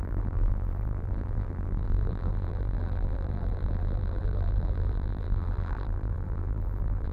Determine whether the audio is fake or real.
fake